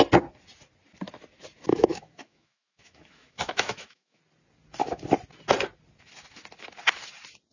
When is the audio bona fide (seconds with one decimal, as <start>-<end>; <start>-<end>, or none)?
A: 0.0-1.7; 4.2-7.5